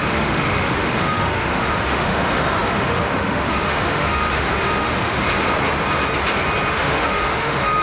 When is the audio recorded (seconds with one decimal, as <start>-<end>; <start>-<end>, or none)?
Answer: 5.2-6.7